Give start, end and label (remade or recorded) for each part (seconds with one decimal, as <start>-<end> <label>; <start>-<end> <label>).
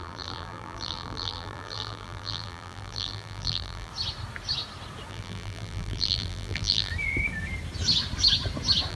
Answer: 0.0-3.9 remade; 3.9-5.1 recorded; 5.1-6.9 remade; 6.9-8.9 recorded